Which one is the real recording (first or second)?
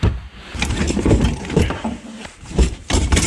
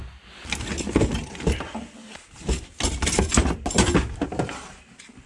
second